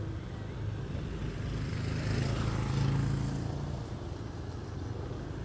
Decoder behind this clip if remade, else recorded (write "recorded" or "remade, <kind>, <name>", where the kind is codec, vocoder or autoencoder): recorded